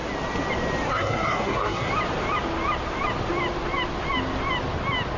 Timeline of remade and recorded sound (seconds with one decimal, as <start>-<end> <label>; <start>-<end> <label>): 0.0-0.9 recorded; 0.9-1.9 remade; 1.9-5.2 recorded